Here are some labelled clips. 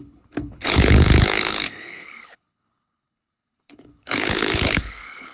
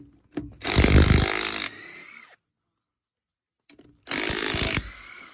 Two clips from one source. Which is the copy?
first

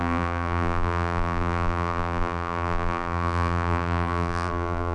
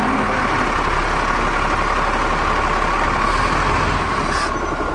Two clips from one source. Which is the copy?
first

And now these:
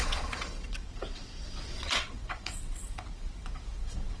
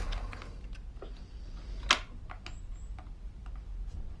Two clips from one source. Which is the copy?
first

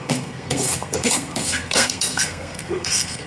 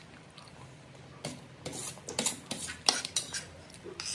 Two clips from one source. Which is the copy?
first